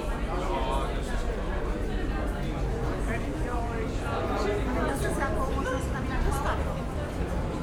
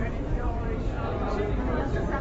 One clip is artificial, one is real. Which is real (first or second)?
first